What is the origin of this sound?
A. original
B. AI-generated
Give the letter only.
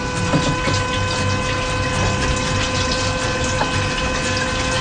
A